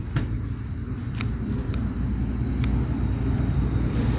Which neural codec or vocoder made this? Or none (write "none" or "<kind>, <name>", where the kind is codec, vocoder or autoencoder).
none